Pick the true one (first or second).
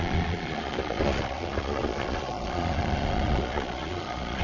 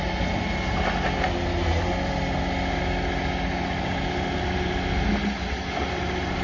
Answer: second